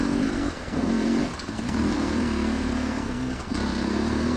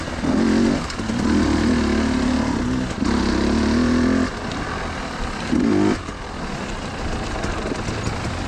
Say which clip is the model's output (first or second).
first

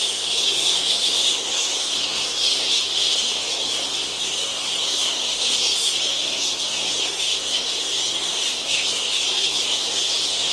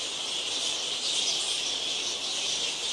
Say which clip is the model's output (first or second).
first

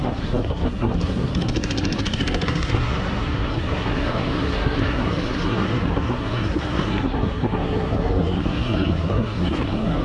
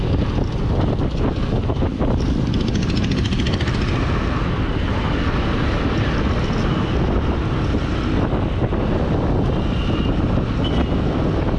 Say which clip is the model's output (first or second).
first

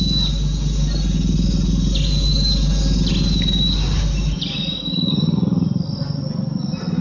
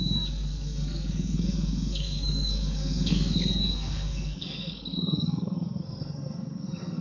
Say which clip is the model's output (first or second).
second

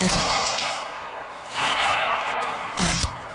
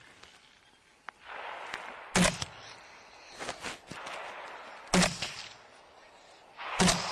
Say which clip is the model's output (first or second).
first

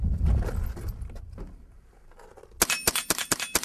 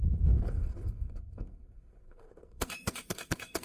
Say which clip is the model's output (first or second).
second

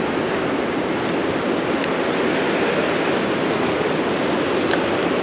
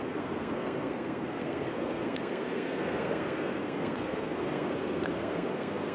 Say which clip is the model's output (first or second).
second